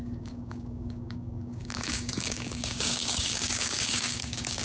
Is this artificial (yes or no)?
yes